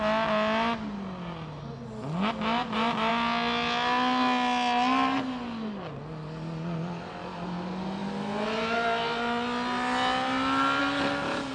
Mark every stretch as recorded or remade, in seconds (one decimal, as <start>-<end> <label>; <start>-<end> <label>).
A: 0.0-11.5 recorded